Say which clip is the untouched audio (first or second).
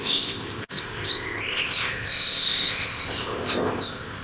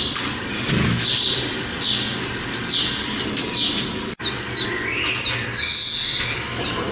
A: second